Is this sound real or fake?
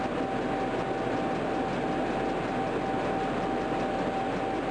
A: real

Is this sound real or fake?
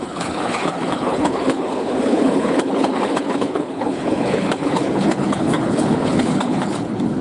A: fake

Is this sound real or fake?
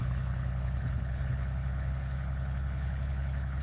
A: fake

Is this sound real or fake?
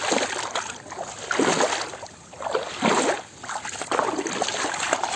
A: real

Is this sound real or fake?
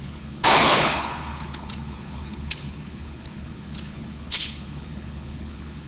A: fake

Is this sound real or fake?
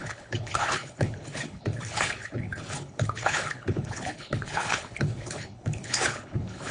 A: fake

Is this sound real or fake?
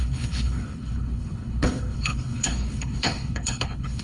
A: fake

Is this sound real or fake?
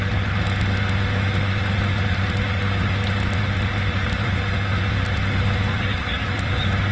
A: real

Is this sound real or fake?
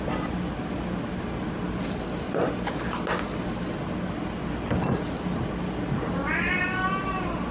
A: real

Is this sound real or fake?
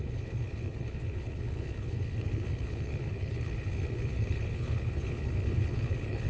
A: fake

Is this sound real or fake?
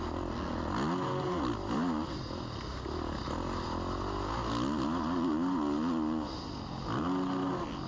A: real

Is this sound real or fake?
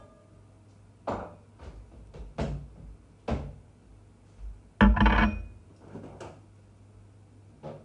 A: real